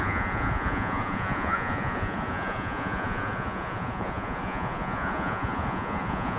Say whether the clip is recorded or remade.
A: remade